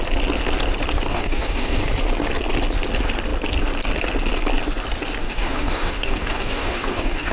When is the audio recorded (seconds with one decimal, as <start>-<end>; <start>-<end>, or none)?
0.0-1.1; 1.8-5.2